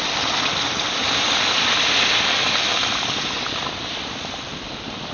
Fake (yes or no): yes